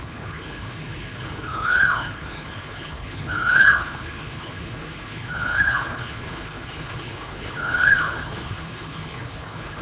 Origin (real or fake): fake